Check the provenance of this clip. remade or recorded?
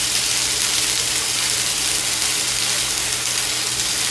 recorded